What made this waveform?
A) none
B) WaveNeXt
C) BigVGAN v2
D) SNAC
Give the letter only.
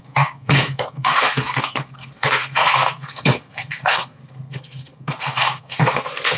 D